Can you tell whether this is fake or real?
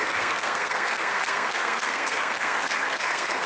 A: fake